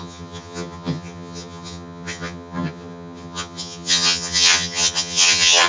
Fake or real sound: fake